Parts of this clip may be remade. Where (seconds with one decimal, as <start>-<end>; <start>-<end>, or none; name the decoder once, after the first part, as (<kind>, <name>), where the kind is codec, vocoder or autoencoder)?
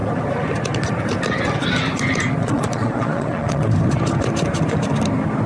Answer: 2.4-3.7 (vocoder, Vocos)